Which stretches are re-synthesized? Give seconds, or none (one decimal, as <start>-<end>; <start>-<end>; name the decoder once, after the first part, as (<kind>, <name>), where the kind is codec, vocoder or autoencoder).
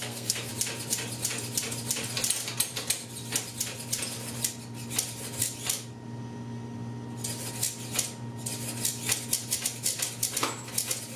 0.0-0.5 (codec, SNAC)